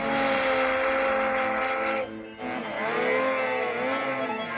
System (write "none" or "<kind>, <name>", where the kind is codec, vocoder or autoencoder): none